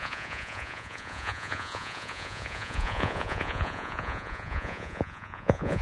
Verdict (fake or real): fake